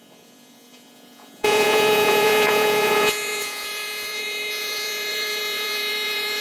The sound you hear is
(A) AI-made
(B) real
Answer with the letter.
A